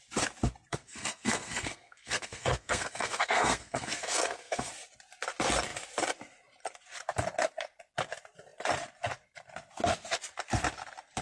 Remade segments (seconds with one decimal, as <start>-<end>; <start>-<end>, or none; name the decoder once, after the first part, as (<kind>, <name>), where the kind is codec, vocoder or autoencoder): 0.7-4.7 (codec, SNAC)